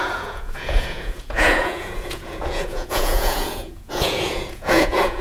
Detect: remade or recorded remade